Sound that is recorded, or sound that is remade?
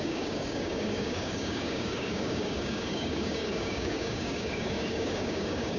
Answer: remade